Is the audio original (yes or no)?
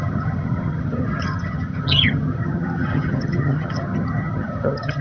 no